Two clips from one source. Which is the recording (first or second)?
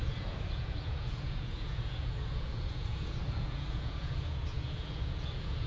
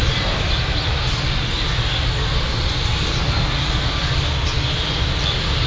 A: second